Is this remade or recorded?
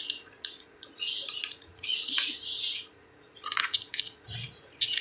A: remade